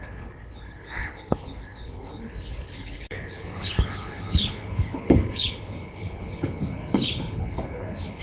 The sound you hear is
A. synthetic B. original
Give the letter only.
A